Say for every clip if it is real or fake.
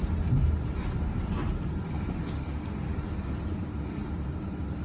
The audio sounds real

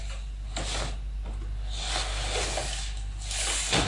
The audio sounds real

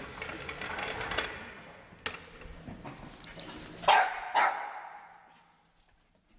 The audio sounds real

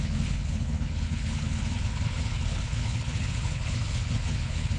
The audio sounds fake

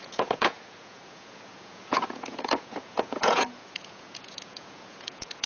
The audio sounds fake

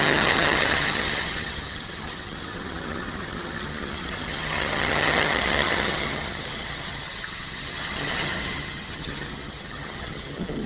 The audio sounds fake